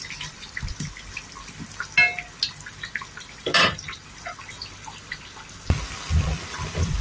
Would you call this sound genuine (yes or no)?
yes